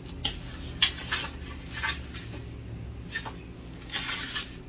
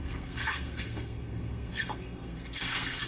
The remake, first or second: second